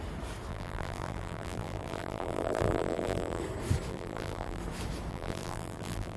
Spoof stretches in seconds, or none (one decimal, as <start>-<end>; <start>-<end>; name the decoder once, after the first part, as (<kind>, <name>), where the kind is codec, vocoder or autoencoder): 0.5-3.4 (vocoder, BigVGAN v2); 3.9-4.6; 5.1-6.2